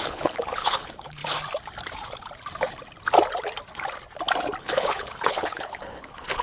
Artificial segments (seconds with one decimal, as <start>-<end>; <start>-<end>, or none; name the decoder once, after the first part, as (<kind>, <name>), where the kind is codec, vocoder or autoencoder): 0.0-1.2 (codec, HILCodec); 4.6-6.4